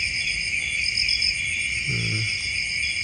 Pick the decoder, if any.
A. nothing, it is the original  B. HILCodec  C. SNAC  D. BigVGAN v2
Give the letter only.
A